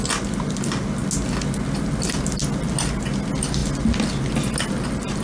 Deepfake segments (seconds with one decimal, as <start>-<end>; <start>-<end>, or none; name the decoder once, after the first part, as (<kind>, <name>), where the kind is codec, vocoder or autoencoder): none